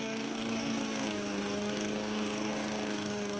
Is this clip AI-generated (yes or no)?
yes